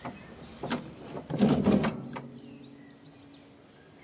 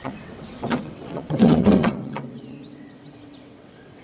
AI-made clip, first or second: second